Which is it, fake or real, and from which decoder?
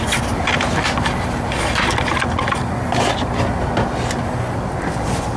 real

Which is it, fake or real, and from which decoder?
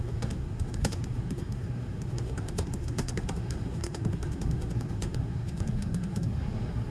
fake, codec, SNAC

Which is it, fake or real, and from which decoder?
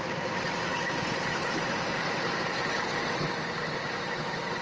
fake, vocoder, BigVGAN v2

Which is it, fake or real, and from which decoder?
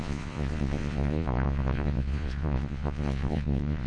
fake, vocoder, Vocos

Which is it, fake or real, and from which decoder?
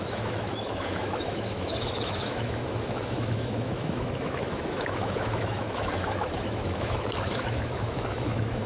fake, autoencoder, DAC-VAE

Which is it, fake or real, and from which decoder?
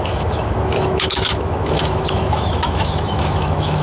fake, autoencoder, DAC-VAE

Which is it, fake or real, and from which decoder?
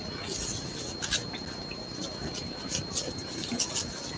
real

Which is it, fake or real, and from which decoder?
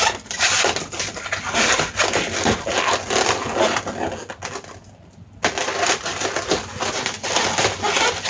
real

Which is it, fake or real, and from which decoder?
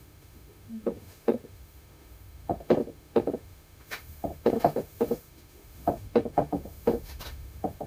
fake, autoencoder, DAC-VAE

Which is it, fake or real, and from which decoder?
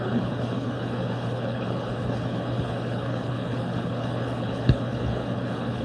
fake, codec, HILCodec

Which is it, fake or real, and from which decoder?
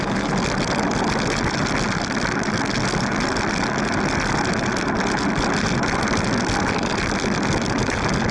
real